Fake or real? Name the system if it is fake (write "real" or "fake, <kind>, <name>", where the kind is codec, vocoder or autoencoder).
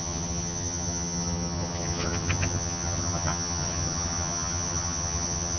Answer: fake, vocoder, HiFi-GAN